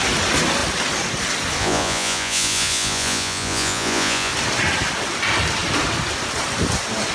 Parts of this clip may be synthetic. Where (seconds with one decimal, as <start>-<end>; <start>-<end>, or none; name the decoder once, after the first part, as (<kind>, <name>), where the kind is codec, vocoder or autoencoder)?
1.6-4.3 (vocoder, Vocos)